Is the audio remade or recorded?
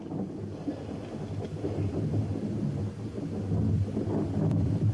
remade